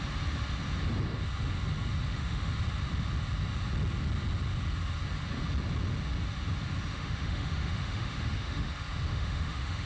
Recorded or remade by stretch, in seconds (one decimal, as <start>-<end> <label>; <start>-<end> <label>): 0.0-2.1 recorded; 2.1-2.6 remade; 2.6-6.9 recorded; 6.9-8.7 remade; 8.7-9.1 recorded; 9.1-9.9 remade